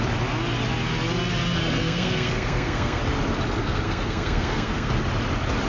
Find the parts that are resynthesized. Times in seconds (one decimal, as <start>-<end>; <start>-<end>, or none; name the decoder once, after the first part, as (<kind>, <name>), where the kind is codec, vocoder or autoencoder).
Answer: 1.8-3.0 (codec, SNAC); 3.6-5.0